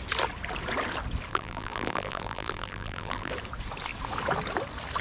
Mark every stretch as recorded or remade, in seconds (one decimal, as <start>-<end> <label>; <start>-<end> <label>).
0.0-1.3 recorded; 1.3-3.3 remade; 3.3-5.0 recorded